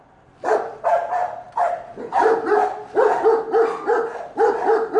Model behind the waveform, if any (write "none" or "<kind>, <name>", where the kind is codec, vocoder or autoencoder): none